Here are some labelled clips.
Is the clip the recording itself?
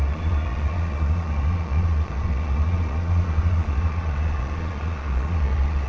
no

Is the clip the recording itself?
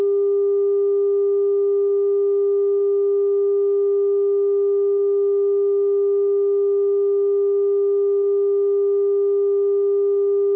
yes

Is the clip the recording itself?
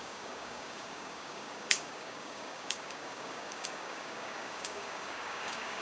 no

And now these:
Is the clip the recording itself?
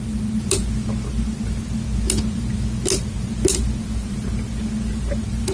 yes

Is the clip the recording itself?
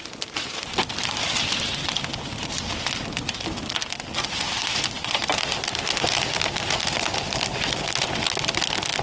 yes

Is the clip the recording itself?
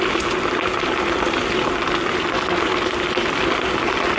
yes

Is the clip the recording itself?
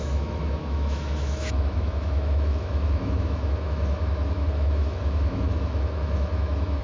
no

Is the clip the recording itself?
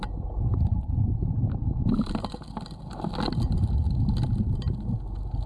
yes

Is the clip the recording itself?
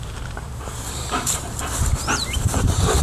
no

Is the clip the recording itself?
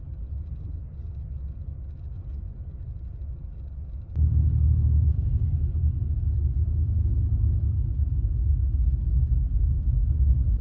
yes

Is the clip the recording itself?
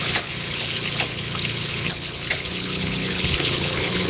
no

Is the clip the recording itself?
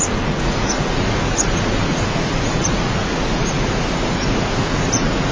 no